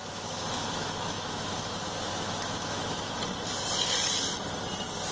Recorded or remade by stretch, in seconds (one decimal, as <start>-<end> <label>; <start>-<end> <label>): 0.0-3.1 remade; 3.1-5.1 recorded